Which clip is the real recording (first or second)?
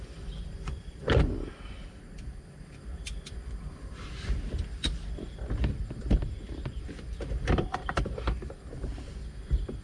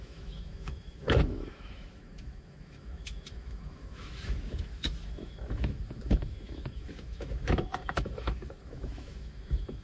first